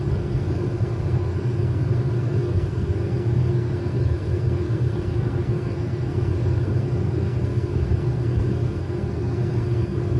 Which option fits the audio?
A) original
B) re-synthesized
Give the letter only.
B